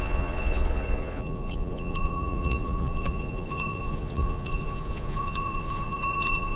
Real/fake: fake